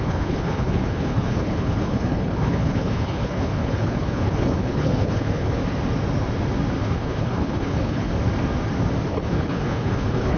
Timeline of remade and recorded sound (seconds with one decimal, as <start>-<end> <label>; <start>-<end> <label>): 0.0-5.6 remade; 5.6-6.8 recorded; 6.8-8.1 remade; 8.1-9.1 recorded; 9.1-10.4 remade